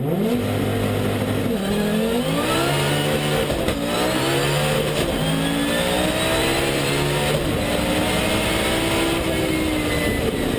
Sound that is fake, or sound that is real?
real